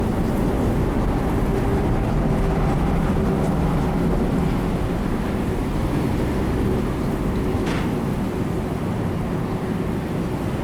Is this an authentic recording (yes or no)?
yes